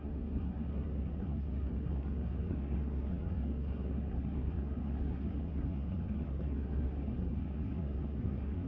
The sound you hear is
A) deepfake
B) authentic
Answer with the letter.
A